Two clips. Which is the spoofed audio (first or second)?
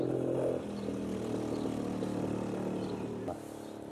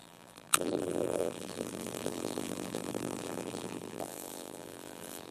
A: second